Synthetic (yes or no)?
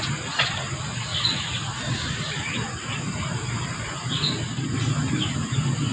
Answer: no